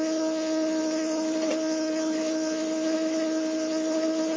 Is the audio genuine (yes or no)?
no